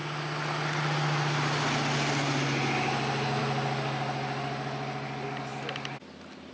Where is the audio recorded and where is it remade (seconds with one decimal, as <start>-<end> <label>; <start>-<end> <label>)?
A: 0.0-6.5 recorded